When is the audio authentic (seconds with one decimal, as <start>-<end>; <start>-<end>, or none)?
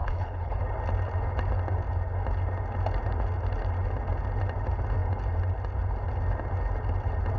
0.6-7.4